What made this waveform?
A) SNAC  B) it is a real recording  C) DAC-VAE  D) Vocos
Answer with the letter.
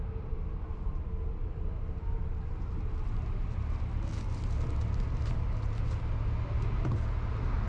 B